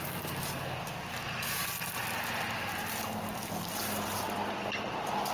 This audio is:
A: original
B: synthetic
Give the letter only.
A